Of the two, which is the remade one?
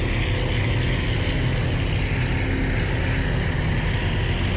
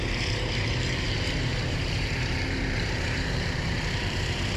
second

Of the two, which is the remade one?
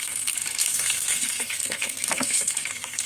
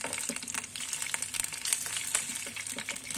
first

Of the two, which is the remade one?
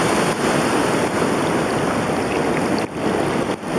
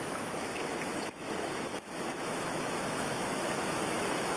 second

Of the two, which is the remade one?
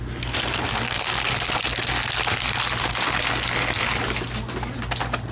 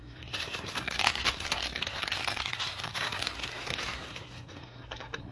second